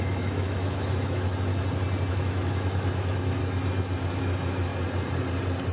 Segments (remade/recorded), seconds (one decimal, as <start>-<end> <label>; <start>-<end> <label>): 0.0-1.5 remade; 1.5-2.1 recorded; 2.1-3.4 remade; 3.4-4.2 recorded; 4.2-4.7 remade; 4.7-5.7 recorded